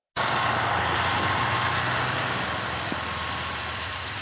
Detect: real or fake real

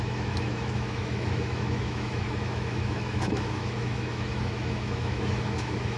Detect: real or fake fake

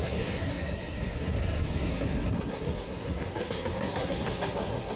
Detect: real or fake fake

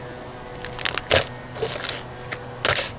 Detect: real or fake real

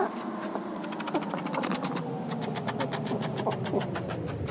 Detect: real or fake real